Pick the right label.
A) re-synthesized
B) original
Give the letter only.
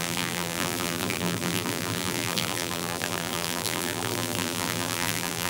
A